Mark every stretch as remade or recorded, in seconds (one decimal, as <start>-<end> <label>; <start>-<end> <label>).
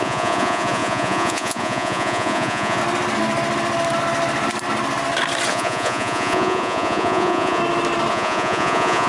0.0-2.8 remade; 2.8-5.5 recorded; 5.5-7.6 remade; 7.6-8.1 recorded; 8.1-9.1 remade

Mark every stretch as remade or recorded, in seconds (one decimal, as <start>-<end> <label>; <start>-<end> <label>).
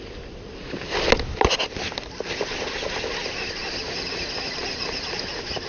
0.0-3.6 recorded; 3.6-5.1 remade; 5.1-5.7 recorded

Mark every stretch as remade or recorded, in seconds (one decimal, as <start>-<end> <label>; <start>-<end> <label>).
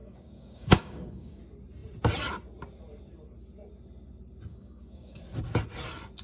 0.0-1.4 remade; 1.4-4.5 recorded; 4.5-5.2 remade; 5.2-6.2 recorded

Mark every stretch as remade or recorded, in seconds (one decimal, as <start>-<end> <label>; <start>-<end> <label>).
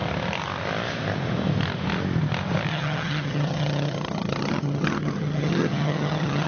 0.0-2.7 recorded; 2.7-6.5 remade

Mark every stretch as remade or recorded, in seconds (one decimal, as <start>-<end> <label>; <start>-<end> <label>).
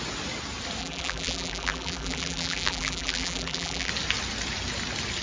0.0-0.8 recorded; 0.8-3.9 remade; 3.9-5.2 recorded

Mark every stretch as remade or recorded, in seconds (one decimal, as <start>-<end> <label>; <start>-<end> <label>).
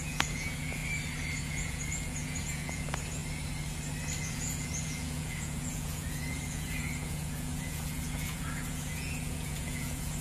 0.0-0.8 remade; 0.8-1.4 recorded; 1.4-3.2 remade; 3.2-4.2 recorded; 4.2-10.2 remade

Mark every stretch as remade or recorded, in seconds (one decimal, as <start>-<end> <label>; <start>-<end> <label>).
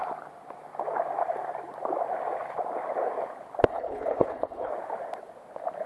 0.0-3.7 recorded; 3.7-4.7 remade; 4.7-5.9 recorded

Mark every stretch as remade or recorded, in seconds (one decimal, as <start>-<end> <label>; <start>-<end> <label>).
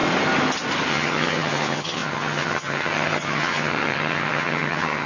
0.0-0.9 recorded; 0.9-5.1 remade